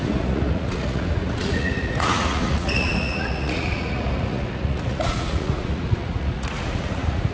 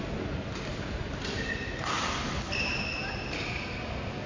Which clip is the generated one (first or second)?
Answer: first